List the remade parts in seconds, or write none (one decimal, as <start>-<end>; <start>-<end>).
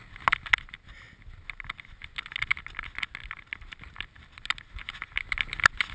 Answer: none